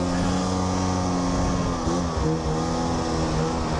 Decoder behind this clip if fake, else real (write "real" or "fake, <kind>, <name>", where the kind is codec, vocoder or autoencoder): real